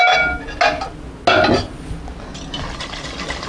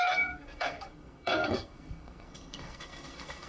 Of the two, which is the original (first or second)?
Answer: first